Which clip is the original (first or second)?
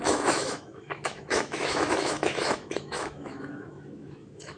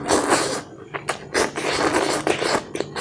second